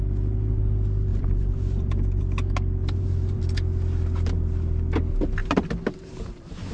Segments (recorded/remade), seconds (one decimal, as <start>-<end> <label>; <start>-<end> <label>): 0.0-1.1 recorded; 1.1-2.2 remade; 2.2-2.8 recorded; 2.8-3.4 remade; 3.4-5.4 recorded; 5.4-6.7 remade